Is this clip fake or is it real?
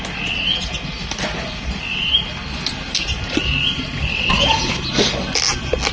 real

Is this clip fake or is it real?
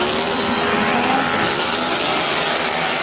real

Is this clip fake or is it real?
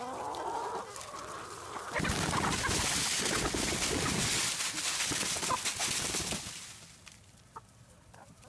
real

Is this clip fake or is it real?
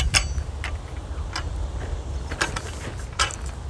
real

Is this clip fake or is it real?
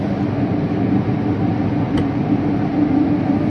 real